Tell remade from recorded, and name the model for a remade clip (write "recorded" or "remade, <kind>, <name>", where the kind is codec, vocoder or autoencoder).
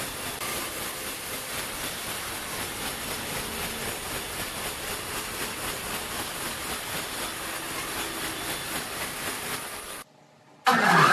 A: recorded